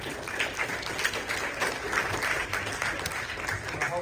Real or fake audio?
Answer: real